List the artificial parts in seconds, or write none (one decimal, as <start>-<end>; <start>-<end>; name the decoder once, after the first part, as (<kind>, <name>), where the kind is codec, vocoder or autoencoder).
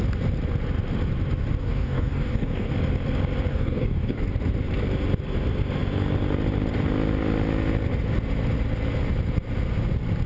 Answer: 1.6-2.7 (codec, DAC); 3.5-4.2